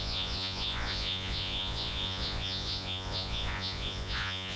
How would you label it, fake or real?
fake